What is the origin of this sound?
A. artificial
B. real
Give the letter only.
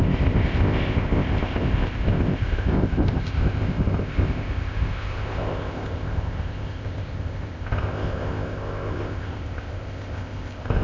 A